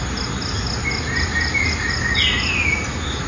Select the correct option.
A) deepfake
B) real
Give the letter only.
B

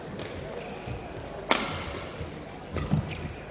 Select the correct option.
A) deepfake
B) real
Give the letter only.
B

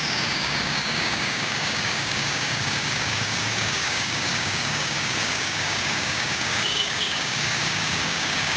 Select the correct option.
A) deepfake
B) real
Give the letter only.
A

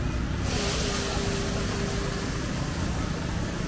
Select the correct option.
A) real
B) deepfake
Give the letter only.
A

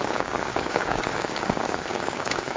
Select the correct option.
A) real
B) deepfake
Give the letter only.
B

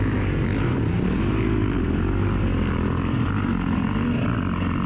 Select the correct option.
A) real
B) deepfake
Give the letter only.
A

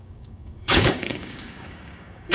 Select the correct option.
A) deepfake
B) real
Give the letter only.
A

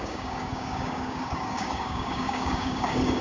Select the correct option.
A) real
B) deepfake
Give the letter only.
B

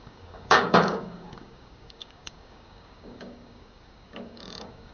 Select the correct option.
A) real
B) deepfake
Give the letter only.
B